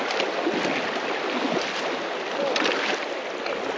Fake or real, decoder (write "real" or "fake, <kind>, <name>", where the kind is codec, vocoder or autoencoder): real